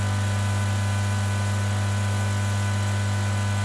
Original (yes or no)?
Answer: yes